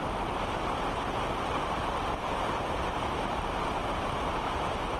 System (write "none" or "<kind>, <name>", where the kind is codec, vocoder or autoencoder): vocoder, BigVGAN v2